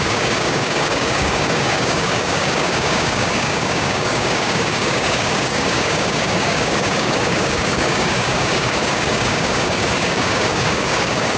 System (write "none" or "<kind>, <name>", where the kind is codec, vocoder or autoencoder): codec, DAC